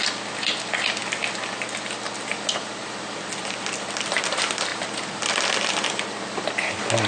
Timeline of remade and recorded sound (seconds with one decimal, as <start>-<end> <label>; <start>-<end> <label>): 0.0-4.7 recorded; 4.7-5.3 remade; 5.3-7.1 recorded